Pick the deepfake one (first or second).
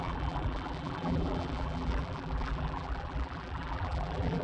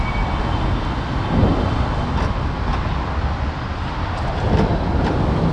first